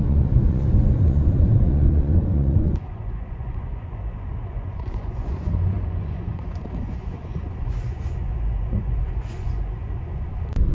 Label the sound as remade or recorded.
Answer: remade